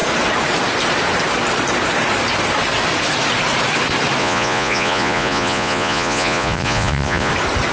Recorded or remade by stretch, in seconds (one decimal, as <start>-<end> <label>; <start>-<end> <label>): 0.0-4.2 recorded; 4.2-7.3 remade; 7.3-7.7 recorded